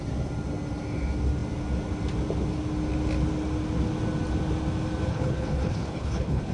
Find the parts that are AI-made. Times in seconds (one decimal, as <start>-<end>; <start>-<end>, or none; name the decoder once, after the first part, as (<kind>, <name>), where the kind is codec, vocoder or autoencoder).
5.1-6.5 (codec, HILCodec)